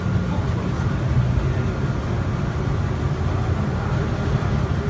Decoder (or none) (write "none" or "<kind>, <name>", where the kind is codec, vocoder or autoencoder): none